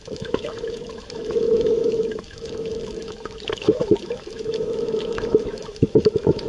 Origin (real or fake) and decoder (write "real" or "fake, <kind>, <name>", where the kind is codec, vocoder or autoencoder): fake, autoencoder, DAC-VAE